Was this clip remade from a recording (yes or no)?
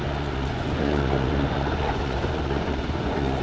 yes